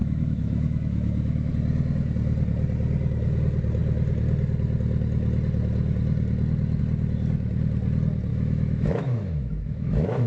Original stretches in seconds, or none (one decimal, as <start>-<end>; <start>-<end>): 1.5-8.3